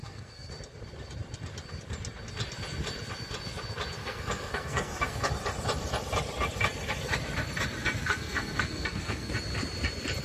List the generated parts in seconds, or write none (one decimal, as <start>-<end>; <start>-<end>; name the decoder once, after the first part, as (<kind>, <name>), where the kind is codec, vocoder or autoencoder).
0.0-0.5 (codec, SNAC); 4.0-5.3; 8.0-9.3

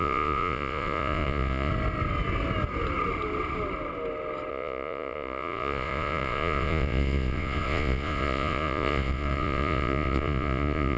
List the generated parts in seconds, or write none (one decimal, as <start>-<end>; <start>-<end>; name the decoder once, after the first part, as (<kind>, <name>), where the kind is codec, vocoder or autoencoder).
0.0-1.7 (vocoder, Vocos); 4.5-11.0

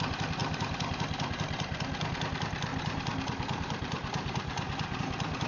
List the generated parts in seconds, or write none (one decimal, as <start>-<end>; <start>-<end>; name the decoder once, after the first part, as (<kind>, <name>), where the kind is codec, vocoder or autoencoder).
0.4-1.8 (vocoder, BigVGAN v2); 2.7-5.0

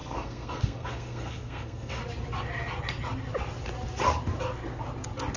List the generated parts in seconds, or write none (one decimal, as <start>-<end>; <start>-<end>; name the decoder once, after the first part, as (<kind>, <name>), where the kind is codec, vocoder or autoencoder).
0.0-2.0 (codec, SNAC)

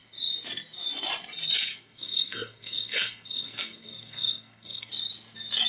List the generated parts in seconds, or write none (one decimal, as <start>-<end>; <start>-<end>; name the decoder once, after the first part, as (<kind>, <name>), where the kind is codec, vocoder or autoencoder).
1.7-4.9 (codec, SNAC)

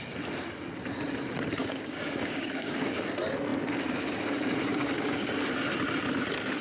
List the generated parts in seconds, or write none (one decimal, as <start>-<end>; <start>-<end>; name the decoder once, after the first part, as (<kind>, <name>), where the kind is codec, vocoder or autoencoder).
1.6-3.0 (codec, DAC); 4.7-5.4